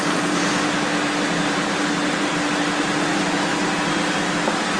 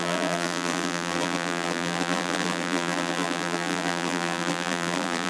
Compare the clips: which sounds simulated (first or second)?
second